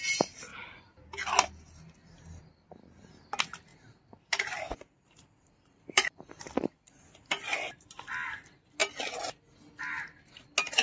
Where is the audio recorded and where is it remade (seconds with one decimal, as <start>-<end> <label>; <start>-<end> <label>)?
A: 0.0-0.5 recorded; 0.5-1.1 remade; 1.1-3.7 recorded; 3.7-6.8 remade; 6.8-10.8 recorded